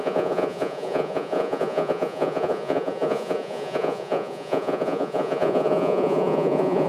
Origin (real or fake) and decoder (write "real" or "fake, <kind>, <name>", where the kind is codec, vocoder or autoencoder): fake, vocoder, Vocos